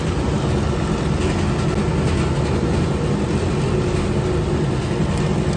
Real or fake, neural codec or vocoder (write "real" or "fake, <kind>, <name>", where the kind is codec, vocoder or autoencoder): real